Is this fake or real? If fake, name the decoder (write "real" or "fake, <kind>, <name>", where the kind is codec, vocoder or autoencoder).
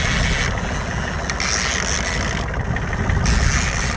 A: real